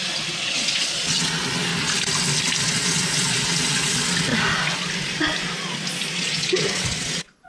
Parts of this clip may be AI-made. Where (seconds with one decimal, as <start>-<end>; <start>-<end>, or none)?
0.0-1.7; 2.6-4.3; 6.1-7.5